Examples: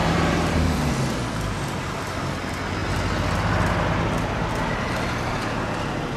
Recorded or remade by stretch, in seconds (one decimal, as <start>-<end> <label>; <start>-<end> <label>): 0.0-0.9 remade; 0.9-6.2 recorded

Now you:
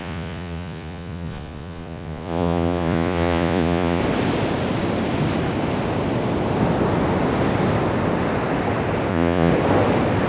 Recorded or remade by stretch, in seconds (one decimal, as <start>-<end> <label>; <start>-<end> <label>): 0.0-4.0 remade; 4.0-9.1 recorded; 9.1-9.5 remade; 9.5-10.3 recorded

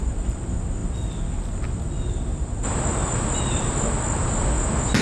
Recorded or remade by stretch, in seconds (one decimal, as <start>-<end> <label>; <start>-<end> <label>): 0.0-5.0 recorded

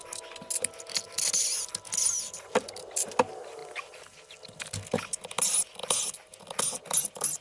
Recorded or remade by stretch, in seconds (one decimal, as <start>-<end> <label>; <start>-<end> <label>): 0.0-7.4 recorded

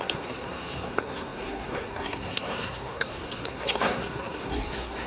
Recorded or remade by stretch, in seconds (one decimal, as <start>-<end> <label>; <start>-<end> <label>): 0.0-5.1 remade

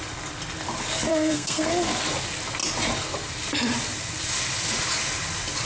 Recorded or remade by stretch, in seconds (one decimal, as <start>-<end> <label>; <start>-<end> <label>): 0.0-1.1 recorded; 1.1-1.7 remade; 1.7-5.7 recorded

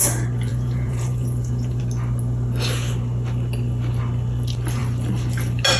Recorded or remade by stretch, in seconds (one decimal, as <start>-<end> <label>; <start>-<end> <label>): 0.0-0.5 recorded; 0.5-1.8 remade; 1.8-5.8 recorded